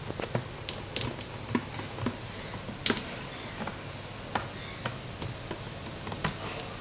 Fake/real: real